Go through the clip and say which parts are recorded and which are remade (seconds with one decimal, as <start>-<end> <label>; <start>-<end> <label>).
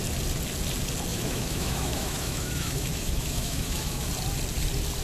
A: 0.0-1.1 recorded; 1.1-4.1 remade; 4.1-5.0 recorded